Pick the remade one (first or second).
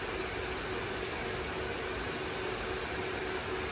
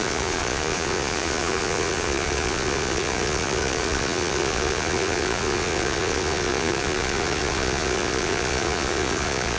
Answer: second